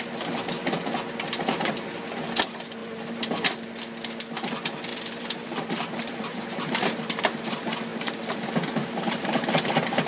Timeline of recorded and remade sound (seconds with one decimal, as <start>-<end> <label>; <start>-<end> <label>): 0.0-2.8 recorded; 2.8-3.5 remade; 3.5-4.9 recorded; 4.9-7.2 remade; 7.2-7.9 recorded; 7.9-8.4 remade; 8.4-8.8 recorded; 8.8-9.4 remade; 9.4-10.1 recorded